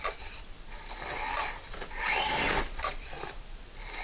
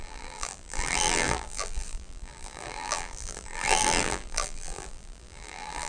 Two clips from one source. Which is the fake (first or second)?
second